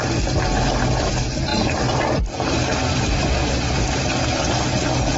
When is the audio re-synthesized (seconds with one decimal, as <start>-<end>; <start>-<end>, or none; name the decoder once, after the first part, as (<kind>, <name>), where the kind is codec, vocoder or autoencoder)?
1.5-4.6 (vocoder, BigVGAN v2)